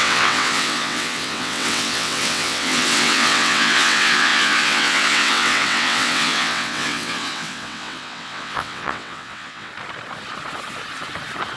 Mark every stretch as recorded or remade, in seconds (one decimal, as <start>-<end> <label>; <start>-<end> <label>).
0.0-9.7 remade; 9.7-11.6 recorded